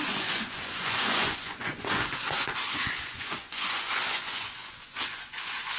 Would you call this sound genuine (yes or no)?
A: no